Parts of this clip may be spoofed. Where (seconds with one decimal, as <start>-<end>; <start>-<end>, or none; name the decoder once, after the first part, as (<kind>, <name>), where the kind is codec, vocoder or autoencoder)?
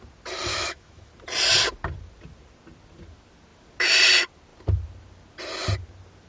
0.5-1.1 (autoencoder, DAC-VAE)